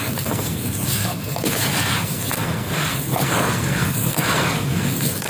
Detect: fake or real fake